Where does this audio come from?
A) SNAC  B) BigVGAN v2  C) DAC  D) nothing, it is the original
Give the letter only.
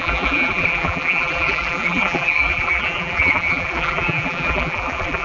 B